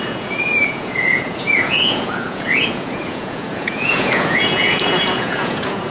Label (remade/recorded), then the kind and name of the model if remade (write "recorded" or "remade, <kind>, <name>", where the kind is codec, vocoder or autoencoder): remade, vocoder, Vocos